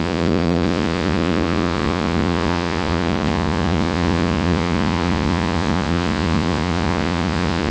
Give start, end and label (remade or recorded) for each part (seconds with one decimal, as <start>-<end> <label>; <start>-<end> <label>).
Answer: 0.0-7.7 remade

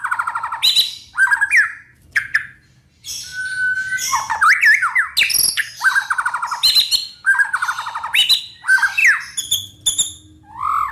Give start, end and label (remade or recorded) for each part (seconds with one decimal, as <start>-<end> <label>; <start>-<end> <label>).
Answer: 0.0-10.9 recorded

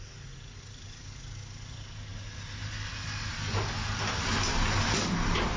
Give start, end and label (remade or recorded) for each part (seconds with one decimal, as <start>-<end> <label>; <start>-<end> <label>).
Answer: 0.0-5.6 recorded

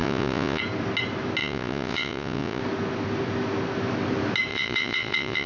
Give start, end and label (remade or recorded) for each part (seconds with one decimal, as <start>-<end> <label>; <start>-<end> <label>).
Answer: 0.0-0.6 remade; 0.6-1.4 recorded; 1.4-2.6 remade; 2.6-4.5 recorded; 4.5-5.5 remade